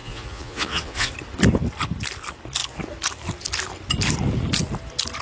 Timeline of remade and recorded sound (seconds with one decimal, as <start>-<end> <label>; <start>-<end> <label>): 0.0-1.1 remade; 1.1-5.2 recorded